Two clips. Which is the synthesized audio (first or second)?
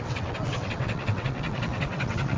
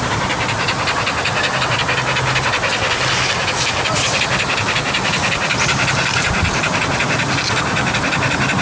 first